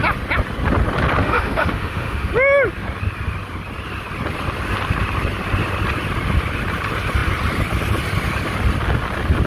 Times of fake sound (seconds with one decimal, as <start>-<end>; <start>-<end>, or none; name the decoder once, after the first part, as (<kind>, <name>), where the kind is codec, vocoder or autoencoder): 1.2-2.3 (autoencoder, DAC-VAE)